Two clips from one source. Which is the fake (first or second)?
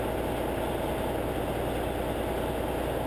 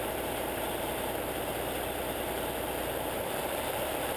second